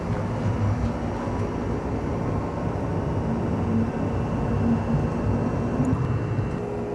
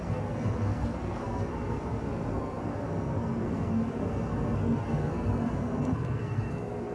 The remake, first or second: second